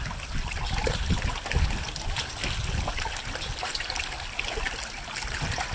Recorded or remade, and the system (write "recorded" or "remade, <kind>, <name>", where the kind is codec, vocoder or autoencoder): recorded